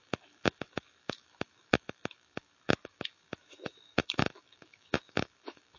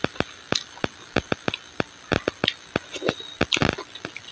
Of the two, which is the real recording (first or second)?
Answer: second